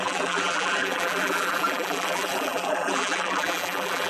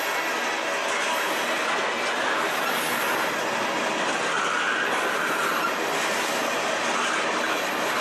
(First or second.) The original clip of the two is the second